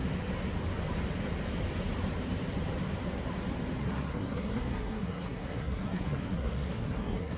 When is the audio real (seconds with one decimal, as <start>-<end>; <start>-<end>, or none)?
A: 0.0-3.8

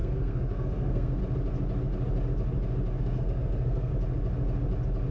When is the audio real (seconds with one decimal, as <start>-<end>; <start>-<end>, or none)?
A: 1.2-3.0; 3.9-5.1

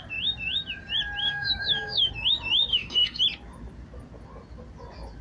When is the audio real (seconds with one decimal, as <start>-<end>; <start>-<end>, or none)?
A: 0.0-1.2; 2.1-2.7; 3.2-5.2

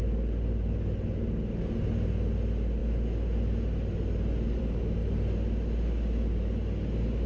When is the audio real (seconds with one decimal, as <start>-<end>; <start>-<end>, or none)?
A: 0.0-7.3

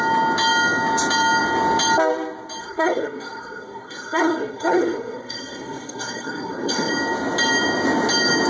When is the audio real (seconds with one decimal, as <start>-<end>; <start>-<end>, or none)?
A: 0.0-2.6; 6.9-8.5